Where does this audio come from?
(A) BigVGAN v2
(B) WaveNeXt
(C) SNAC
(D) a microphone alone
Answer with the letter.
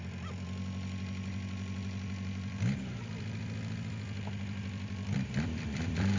A